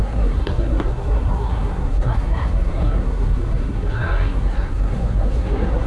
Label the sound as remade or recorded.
remade